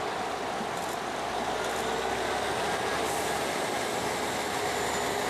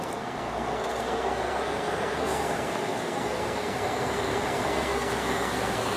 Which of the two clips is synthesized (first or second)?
second